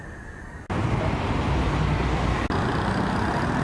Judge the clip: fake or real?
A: real